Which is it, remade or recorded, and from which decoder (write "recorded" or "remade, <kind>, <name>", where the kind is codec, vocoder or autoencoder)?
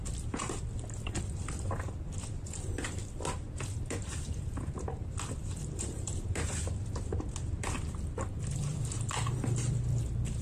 remade, vocoder, BigVGAN v2